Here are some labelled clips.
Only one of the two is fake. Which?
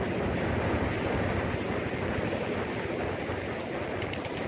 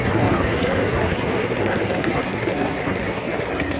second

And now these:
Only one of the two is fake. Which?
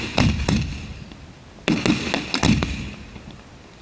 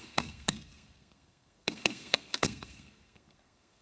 second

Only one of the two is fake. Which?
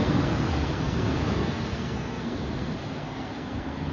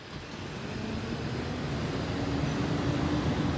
first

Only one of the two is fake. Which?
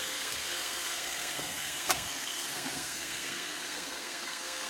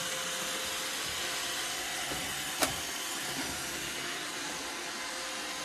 first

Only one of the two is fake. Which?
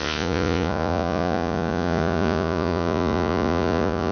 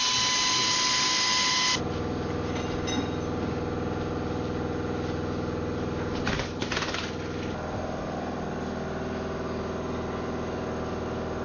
first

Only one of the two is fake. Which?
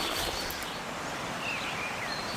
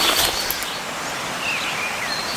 first